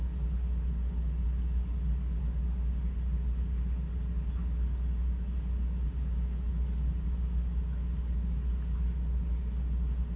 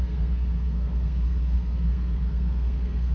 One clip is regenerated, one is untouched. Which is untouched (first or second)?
first